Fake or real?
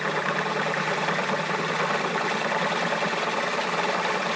real